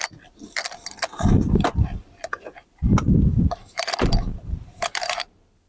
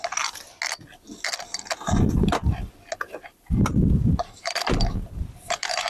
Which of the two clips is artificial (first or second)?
first